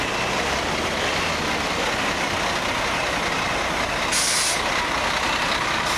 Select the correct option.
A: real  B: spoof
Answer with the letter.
A